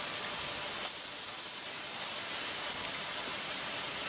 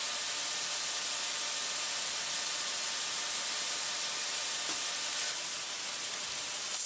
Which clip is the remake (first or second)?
first